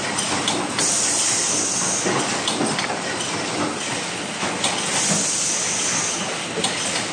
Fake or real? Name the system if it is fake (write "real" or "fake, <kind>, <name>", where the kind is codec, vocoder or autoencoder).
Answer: real